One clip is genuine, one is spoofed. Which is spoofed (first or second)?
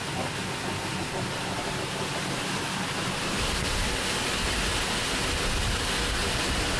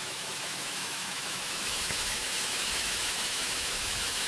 second